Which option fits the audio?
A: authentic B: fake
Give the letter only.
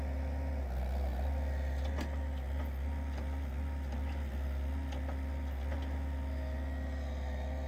A